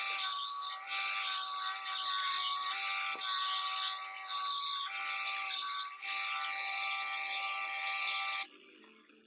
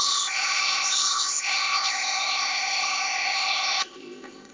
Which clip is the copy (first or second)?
second